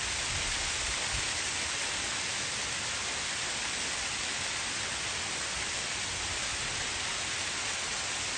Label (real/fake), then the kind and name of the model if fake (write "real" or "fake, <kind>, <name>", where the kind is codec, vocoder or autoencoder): real